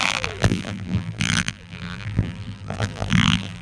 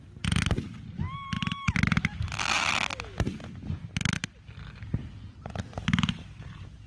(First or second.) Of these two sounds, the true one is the second